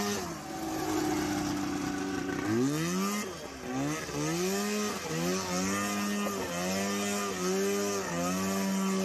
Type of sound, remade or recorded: recorded